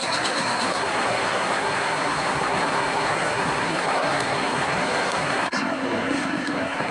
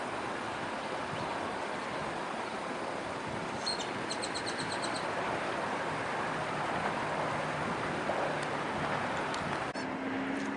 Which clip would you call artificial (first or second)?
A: first